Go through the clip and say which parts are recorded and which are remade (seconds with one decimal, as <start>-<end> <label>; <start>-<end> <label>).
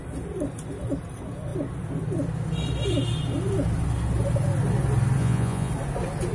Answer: 0.0-5.2 recorded; 5.2-5.7 remade; 5.7-6.3 recorded